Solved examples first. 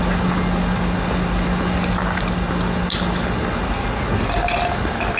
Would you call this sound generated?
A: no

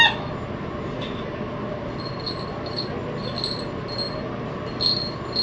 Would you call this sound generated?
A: no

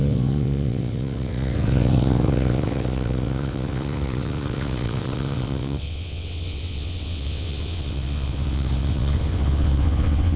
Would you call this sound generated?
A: yes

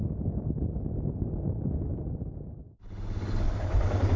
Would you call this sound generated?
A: no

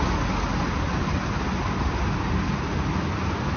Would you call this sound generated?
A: no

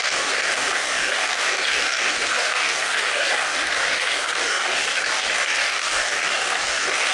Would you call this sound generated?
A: yes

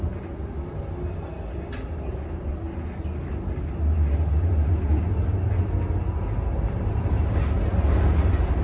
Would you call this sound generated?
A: no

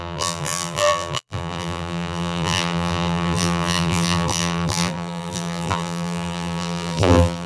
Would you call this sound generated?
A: yes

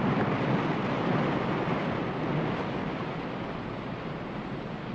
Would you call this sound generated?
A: yes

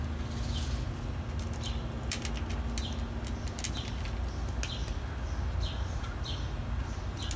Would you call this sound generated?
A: no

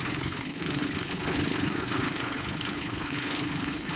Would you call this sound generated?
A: yes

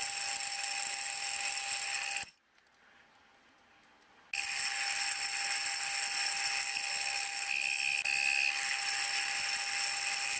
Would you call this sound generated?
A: no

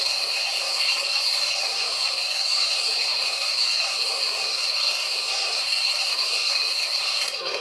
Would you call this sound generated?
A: yes